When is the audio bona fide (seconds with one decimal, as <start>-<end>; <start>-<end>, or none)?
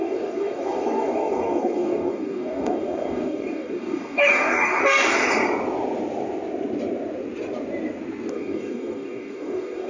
4.8-8.3